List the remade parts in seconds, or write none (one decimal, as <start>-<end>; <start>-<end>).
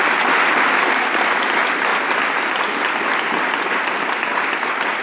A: none